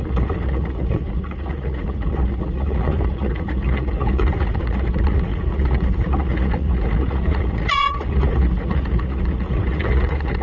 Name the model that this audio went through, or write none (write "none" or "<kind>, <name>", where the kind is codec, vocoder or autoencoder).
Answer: vocoder, Vocos